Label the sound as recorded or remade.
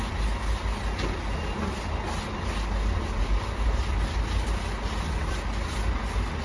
recorded